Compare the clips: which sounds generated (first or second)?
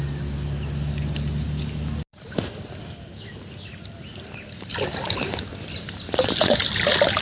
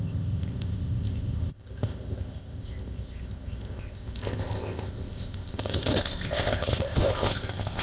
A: second